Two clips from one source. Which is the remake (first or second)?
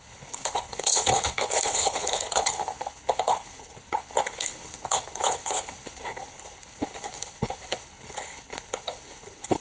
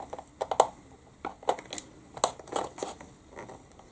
first